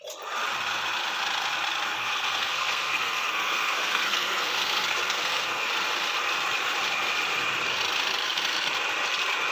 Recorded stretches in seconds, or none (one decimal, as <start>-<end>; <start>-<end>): 0.0-1.9; 5.7-9.5

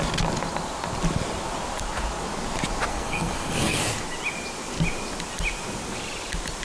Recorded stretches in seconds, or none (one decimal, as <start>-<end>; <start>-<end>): 0.0-2.9; 3.8-6.6

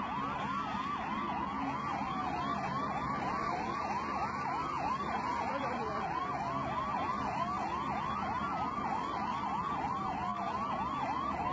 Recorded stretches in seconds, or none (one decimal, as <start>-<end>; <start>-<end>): 0.0-11.5